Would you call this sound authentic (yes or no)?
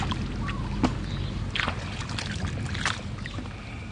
yes